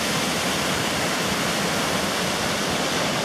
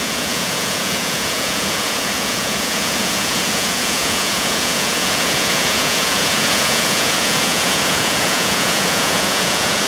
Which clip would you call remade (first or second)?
second